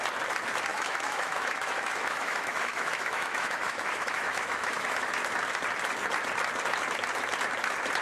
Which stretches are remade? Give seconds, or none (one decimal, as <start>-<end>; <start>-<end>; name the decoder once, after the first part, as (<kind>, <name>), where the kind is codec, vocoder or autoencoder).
0.7-5.1 (autoencoder, DAC-VAE)